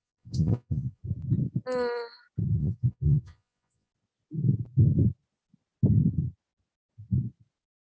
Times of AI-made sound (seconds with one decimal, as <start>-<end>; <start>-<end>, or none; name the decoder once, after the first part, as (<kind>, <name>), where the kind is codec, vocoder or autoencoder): 0.0-1.0 (vocoder, Vocos); 2.6-3.9